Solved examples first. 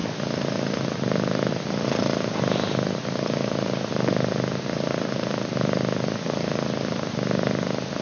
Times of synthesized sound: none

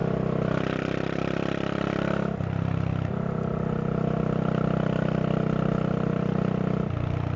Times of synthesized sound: none

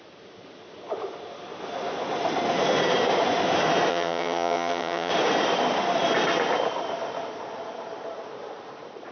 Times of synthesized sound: 3.9-5.1 (vocoder, HiFi-GAN)

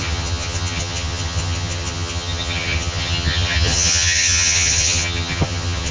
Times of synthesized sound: 0.0-5.9 (vocoder, HiFi-GAN)

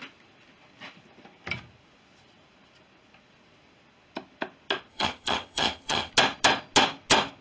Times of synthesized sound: 4.9-6.1 (vocoder, HiFi-GAN)

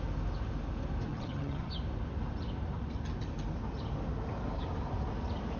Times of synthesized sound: 1.1-1.7 (vocoder, HiFi-GAN)

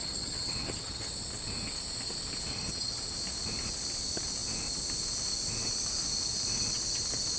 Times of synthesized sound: 0.0-1.1 (vocoder, HiFi-GAN); 2.5-3.0